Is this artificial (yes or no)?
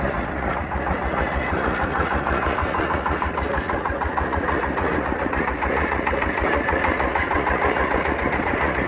yes